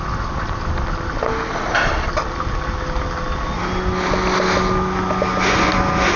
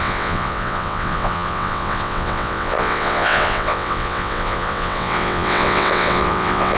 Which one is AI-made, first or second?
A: second